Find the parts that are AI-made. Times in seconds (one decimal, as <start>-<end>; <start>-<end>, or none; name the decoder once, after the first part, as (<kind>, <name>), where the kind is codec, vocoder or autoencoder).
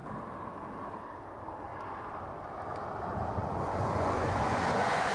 3.4-5.1 (vocoder, Vocos)